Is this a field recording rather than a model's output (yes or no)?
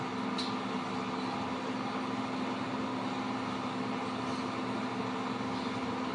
yes